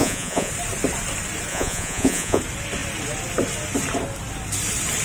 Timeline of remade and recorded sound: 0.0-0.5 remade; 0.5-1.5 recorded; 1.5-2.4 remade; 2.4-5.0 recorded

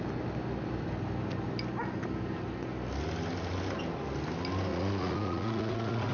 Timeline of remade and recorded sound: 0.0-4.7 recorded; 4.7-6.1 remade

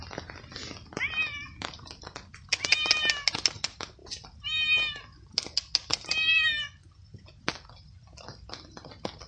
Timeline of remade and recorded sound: 0.0-9.3 recorded